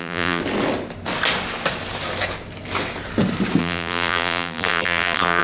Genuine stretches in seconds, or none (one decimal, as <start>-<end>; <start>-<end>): 0.4-3.6